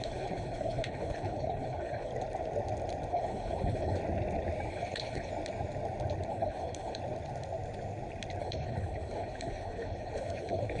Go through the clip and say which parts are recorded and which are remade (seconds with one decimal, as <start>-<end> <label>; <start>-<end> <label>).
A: 0.0-2.1 remade; 2.1-3.1 recorded; 3.1-4.0 remade; 4.0-4.7 recorded; 4.7-5.3 remade; 5.3-6.3 recorded; 6.3-7.0 remade; 7.0-8.4 recorded; 8.4-10.8 remade